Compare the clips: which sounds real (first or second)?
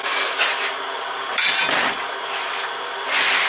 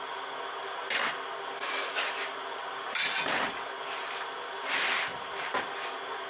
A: first